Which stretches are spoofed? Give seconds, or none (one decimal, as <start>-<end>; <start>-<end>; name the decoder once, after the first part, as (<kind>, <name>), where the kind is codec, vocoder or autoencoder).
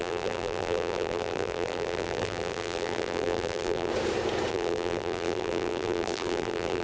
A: 0.0-3.9 (vocoder, BigVGAN v2); 4.5-6.8